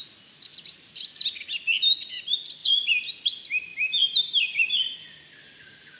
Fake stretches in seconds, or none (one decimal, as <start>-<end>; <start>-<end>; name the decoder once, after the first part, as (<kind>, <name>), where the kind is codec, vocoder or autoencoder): 0.5-1.0 (vocoder, BigVGAN v2); 2.6-3.1; 3.7-6.0